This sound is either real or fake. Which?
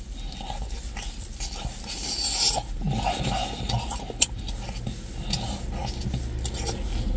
real